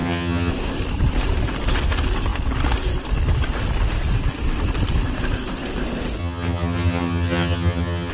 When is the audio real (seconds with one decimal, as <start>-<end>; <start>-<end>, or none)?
0.5-6.2